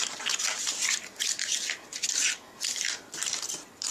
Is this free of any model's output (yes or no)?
yes